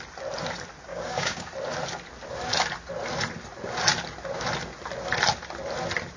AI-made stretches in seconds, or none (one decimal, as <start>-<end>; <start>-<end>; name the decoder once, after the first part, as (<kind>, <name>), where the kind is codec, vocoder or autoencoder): 0.9-1.5 (codec, DAC)